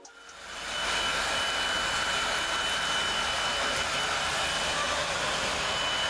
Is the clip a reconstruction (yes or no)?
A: no